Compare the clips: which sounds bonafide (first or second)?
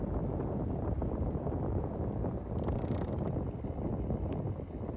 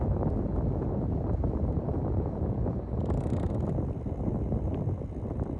second